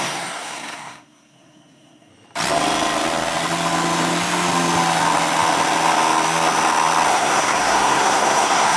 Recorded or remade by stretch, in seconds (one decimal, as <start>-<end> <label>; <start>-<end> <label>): 0.0-2.1 remade; 2.1-7.1 recorded; 7.1-8.8 remade

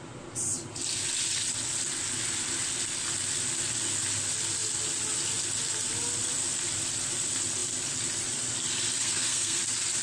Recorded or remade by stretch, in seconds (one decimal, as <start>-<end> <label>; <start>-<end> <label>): 0.0-9.0 recorded; 9.0-9.6 remade; 9.6-10.0 recorded

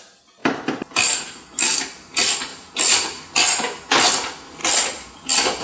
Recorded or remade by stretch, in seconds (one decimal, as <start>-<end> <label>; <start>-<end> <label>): 0.0-5.6 recorded